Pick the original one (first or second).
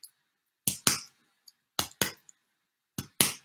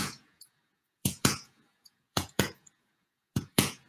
first